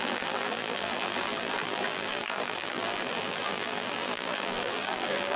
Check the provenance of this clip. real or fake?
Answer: fake